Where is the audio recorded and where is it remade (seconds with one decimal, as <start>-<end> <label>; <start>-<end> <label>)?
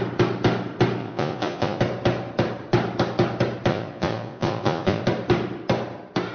0.0-1.0 recorded; 1.0-1.8 remade; 1.8-3.7 recorded; 3.7-5.0 remade; 5.0-6.3 recorded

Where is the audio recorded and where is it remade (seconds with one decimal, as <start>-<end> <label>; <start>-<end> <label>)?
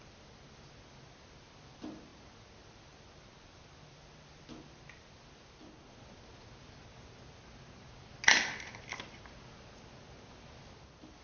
0.0-11.2 recorded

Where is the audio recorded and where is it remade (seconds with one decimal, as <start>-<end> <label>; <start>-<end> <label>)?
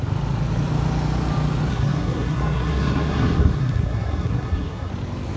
0.0-1.7 recorded; 1.7-4.9 remade; 4.9-5.4 recorded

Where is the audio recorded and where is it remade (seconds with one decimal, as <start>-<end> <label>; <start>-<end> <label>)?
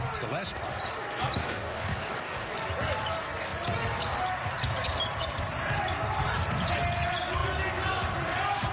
0.0-1.4 recorded; 1.4-2.5 remade; 2.5-8.7 recorded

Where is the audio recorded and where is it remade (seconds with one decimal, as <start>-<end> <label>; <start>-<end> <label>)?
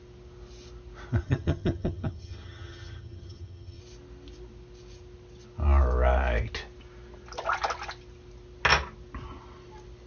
0.0-1.2 recorded; 1.2-3.8 remade; 3.8-10.1 recorded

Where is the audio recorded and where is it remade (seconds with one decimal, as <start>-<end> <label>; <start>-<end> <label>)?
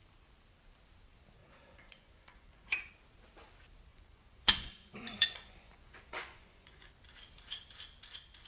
0.0-1.4 recorded; 1.4-2.9 remade; 2.9-3.9 recorded; 3.9-6.9 remade; 6.9-8.5 recorded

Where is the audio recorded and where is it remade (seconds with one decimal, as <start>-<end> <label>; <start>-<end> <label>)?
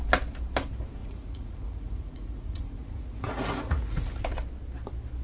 0.0-1.0 recorded; 1.0-4.1 remade; 4.1-5.2 recorded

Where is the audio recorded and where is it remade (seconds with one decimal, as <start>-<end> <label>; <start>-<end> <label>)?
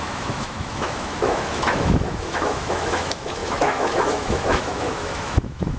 0.0-5.8 remade